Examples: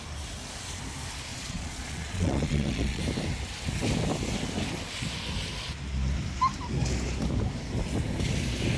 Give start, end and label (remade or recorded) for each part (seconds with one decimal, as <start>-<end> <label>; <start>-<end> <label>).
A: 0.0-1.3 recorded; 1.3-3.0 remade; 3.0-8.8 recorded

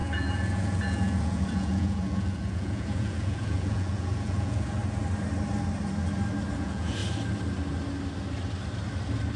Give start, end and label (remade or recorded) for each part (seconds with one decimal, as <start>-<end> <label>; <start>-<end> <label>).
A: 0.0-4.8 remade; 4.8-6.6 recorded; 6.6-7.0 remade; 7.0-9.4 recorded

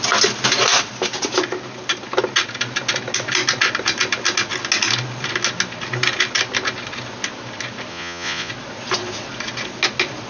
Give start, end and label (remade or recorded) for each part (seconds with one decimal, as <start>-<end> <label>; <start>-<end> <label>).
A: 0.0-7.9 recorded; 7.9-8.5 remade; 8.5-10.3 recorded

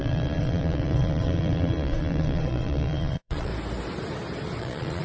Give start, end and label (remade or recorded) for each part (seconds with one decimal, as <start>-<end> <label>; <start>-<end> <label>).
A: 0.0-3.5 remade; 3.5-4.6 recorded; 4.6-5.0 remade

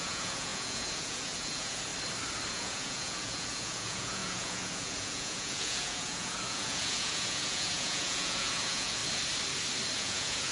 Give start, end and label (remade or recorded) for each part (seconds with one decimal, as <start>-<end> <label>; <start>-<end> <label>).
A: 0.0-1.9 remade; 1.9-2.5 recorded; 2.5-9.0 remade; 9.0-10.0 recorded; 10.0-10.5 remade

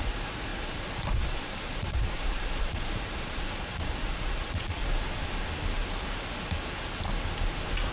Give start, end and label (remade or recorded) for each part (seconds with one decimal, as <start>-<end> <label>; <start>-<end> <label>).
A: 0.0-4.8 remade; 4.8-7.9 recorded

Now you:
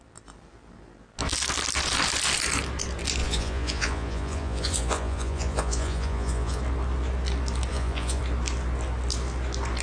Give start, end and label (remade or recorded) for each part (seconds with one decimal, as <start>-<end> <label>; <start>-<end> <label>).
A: 0.0-3.2 recorded; 3.2-6.6 remade; 6.6-7.7 recorded; 7.7-8.2 remade; 8.2-9.8 recorded

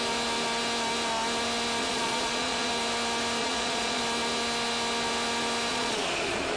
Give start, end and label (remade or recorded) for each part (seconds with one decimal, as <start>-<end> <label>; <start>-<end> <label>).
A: 0.0-1.8 recorded; 1.8-2.7 remade; 2.7-3.4 recorded; 3.4-4.0 remade; 4.0-5.7 recorded; 5.7-6.6 remade